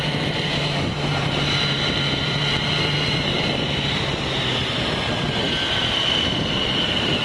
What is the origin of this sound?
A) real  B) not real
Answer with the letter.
B